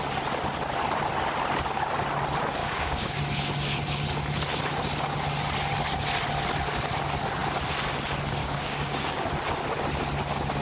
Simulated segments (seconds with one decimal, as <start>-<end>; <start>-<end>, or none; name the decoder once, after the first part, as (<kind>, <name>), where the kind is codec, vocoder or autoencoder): 2.6-3.2 (codec, DAC); 8.4-9.3